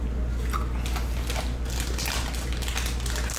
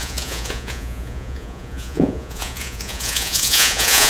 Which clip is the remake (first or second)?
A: second